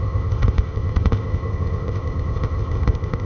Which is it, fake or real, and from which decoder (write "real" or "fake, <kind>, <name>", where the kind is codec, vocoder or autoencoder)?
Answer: fake, codec, ZipCodec